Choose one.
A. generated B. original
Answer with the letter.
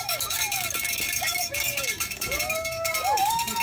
A